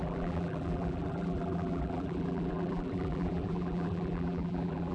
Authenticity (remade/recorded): remade